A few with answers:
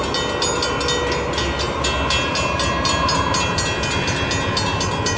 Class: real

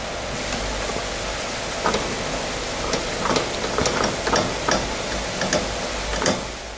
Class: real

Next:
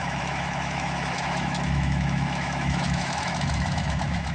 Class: fake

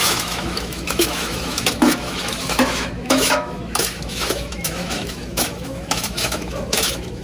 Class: fake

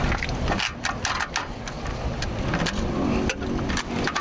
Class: real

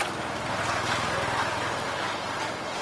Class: real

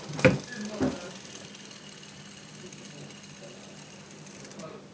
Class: real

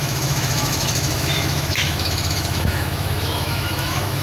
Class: fake